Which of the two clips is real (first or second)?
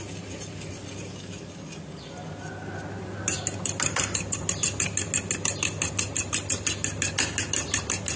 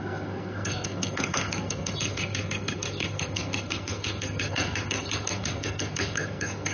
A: first